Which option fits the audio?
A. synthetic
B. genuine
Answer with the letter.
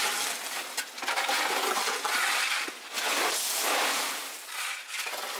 B